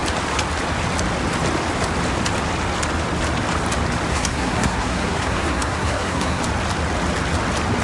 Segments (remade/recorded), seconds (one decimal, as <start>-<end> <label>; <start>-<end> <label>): 0.0-4.1 recorded; 4.1-6.4 remade; 6.4-7.8 recorded